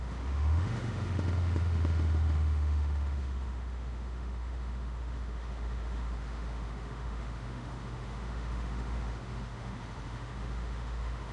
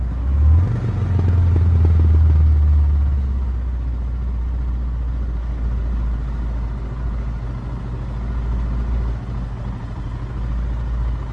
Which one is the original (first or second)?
second